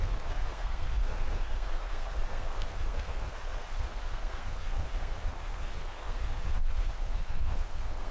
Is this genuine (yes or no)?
no